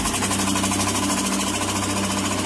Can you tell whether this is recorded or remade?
recorded